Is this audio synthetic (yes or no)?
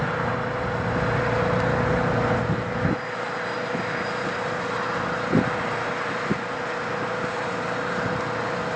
no